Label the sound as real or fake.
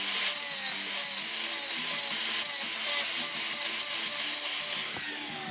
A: real